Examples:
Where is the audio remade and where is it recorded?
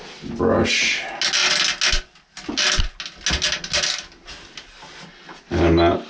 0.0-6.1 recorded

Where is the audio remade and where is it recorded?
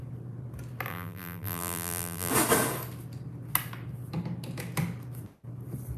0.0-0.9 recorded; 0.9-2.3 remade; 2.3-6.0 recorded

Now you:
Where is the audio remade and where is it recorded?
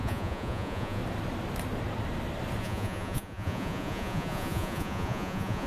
0.0-1.0 remade; 1.0-2.6 recorded; 2.6-5.7 remade